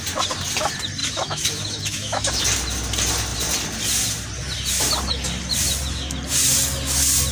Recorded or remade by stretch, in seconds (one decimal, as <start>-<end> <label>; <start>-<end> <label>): 0.0-1.0 recorded; 1.0-2.4 remade; 2.4-7.3 recorded